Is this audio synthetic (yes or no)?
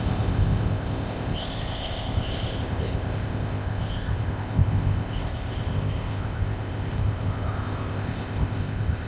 yes